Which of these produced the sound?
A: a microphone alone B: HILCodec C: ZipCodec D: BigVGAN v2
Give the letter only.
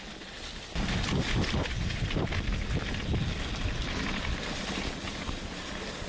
A